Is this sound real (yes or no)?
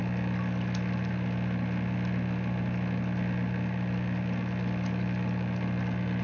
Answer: yes